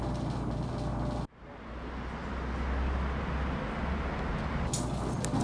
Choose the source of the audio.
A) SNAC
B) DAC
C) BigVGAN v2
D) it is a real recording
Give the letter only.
D